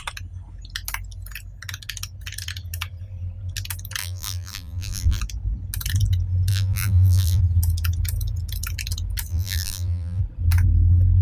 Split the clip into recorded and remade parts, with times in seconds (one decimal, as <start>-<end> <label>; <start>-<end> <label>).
0.0-4.0 recorded; 4.0-5.2 remade; 5.2-6.5 recorded; 6.5-7.4 remade; 7.4-9.3 recorded; 9.3-10.2 remade; 10.2-11.2 recorded